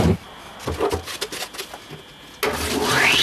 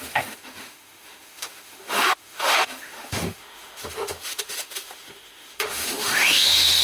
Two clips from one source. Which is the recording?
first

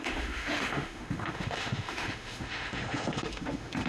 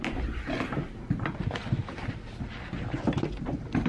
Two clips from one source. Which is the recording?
second